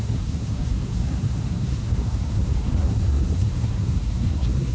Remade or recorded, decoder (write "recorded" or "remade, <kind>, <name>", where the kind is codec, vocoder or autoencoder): remade, codec, SNAC